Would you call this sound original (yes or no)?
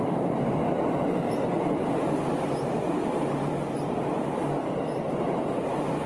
yes